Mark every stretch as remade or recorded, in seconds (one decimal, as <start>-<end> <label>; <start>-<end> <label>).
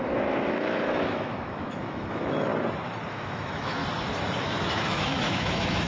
0.0-2.5 remade; 2.5-3.1 recorded; 3.1-3.8 remade; 3.8-4.4 recorded; 4.4-5.9 remade